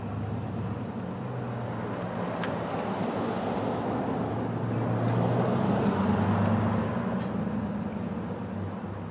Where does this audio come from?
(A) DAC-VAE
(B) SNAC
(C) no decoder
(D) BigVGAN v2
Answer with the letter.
C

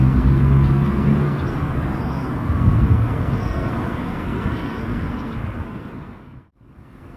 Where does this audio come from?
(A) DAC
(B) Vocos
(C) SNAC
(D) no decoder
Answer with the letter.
C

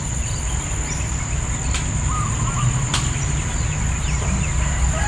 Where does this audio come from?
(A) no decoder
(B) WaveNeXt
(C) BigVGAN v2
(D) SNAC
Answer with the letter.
A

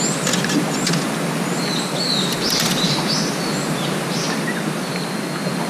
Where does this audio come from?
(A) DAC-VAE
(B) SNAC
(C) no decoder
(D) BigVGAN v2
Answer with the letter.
C